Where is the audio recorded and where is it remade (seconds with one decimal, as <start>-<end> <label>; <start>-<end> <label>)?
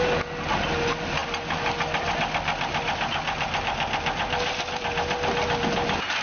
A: 0.0-6.2 recorded